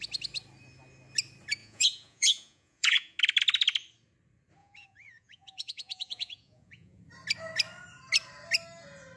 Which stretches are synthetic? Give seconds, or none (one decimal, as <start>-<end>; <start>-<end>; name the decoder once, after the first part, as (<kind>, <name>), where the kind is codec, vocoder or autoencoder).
1.6-3.2 (vocoder, Vocos); 4.6-7.0